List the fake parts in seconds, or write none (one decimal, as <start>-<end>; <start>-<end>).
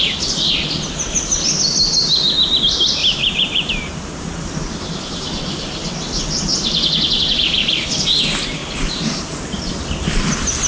3.0-5.9; 8.6-9.4